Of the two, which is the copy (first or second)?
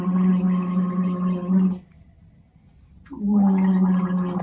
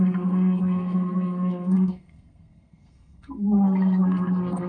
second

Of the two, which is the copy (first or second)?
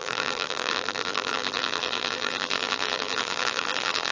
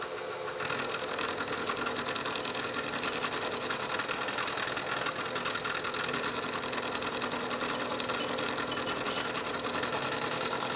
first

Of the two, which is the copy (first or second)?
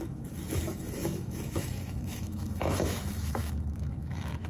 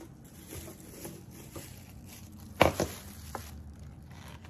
first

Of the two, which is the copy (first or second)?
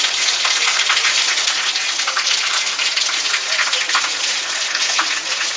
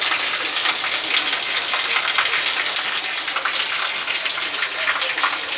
first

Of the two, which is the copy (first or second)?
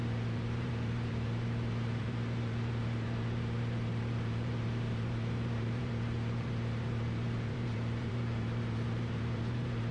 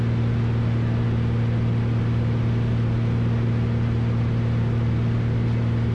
first